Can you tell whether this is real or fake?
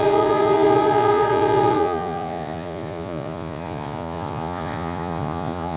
fake